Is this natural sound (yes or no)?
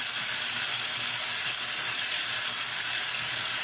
yes